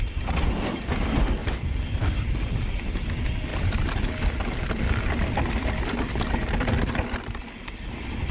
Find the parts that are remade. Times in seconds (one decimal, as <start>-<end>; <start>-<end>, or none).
1.4-2.9; 3.5-7.9